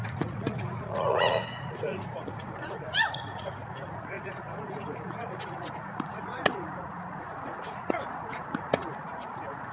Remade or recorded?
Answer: remade